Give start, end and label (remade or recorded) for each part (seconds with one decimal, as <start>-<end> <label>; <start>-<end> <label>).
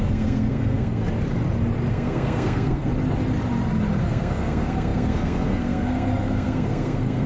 0.0-1.0 remade; 1.0-1.9 recorded; 1.9-2.9 remade; 2.9-4.0 recorded; 4.0-7.3 remade